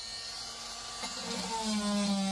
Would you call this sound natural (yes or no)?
yes